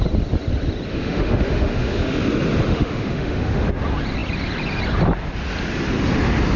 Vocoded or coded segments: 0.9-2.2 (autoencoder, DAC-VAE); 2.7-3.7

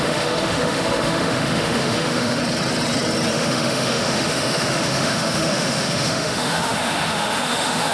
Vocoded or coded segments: 0.0-2.4 (autoencoder, DAC-VAE); 3.3-7.9

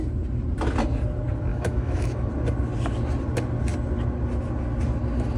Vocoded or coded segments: 1.5-2.3 (autoencoder, DAC-VAE)

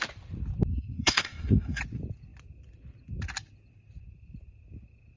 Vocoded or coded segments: 0.7-1.8 (codec, SNAC)

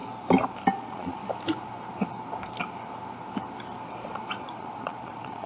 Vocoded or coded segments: 0.7-1.2 (vocoder, Vocos); 4.4-5.5

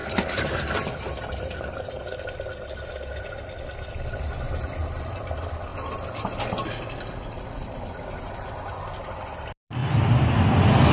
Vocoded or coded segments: none

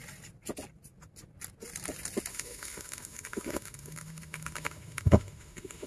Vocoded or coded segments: 2.3-5.9 (autoencoder, DAC-VAE)